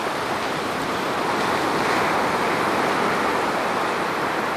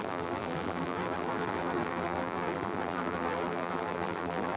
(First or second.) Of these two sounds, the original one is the first